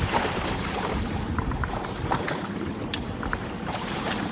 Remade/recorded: remade